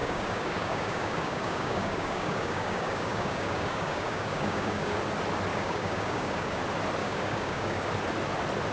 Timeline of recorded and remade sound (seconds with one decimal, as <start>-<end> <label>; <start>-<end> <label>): 0.0-5.0 remade; 5.0-5.5 recorded; 5.5-6.6 remade; 6.6-7.0 recorded; 7.0-7.9 remade; 7.9-8.7 recorded